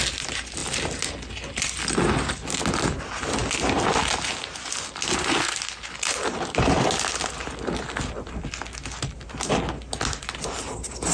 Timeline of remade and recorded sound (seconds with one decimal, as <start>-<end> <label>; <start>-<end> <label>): 0.0-11.1 recorded